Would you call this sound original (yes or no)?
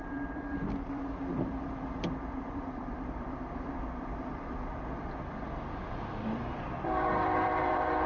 no